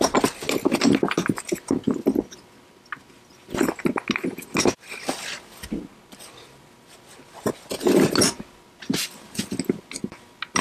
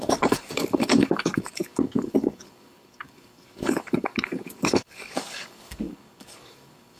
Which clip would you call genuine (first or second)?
first